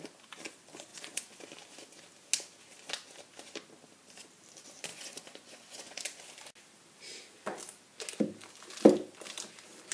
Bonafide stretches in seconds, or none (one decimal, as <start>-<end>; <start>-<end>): 0.0-0.9; 1.4-4.9; 6.2-9.9